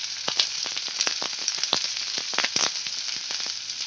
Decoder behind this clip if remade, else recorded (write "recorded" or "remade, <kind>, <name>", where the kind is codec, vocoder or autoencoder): recorded